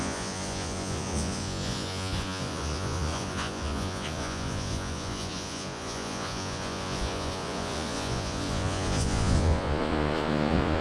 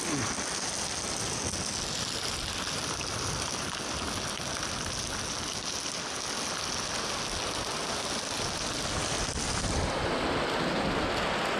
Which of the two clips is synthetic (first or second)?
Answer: first